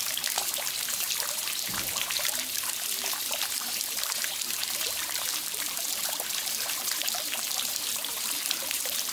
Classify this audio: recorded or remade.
remade